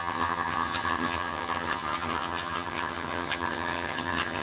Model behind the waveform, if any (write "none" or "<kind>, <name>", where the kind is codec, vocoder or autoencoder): vocoder, HiFi-GAN